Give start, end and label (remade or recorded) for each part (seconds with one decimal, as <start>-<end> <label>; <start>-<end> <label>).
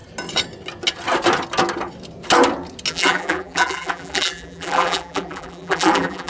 0.0-2.9 recorded; 2.9-6.3 remade